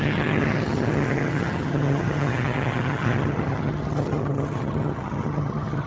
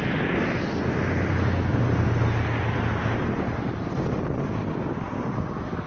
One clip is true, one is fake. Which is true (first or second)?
second